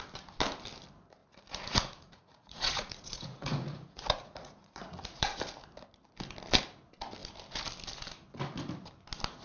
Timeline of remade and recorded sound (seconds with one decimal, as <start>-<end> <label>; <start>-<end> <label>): 0.0-1.2 recorded; 1.2-5.4 remade; 5.4-9.4 recorded